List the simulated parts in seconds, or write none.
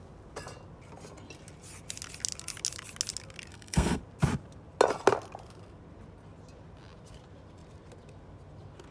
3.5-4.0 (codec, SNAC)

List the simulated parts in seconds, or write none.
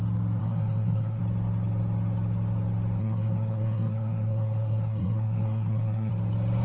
0.4-1.2 (codec, SNAC); 3.0-6.1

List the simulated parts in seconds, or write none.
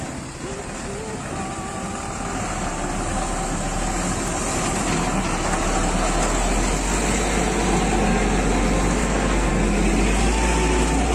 9.0-9.5 (codec, SNAC)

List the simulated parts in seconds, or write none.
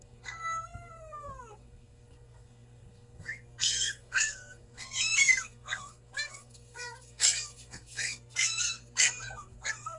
0.0-10.0 (codec, SNAC)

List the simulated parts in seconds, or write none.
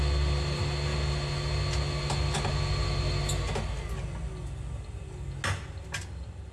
none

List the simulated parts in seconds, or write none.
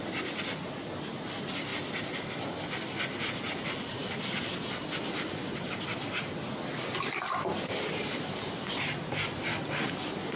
none